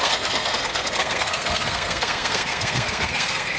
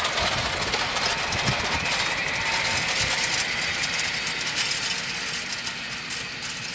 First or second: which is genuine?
second